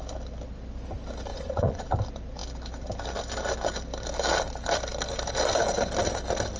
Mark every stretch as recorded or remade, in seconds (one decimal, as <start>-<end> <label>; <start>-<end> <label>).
0.0-1.3 recorded; 1.3-1.9 remade; 1.9-6.6 recorded